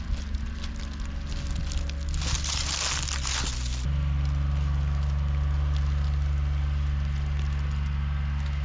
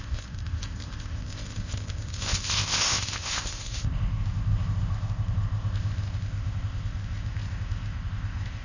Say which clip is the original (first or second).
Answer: first